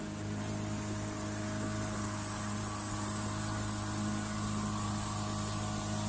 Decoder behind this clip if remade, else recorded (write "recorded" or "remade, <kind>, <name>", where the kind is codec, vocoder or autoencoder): recorded